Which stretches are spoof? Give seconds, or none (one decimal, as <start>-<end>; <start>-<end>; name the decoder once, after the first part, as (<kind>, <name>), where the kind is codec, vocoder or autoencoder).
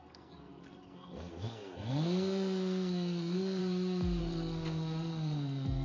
0.0-3.6 (codec, SNAC); 4.2-5.8